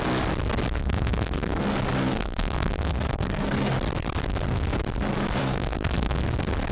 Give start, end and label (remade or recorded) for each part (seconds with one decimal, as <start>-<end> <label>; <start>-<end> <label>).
0.0-0.8 recorded; 0.8-1.6 remade; 1.6-2.0 recorded; 2.0-3.7 remade; 3.7-5.4 recorded; 5.4-6.2 remade; 6.2-6.7 recorded